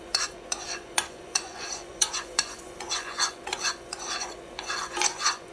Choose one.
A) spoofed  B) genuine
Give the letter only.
A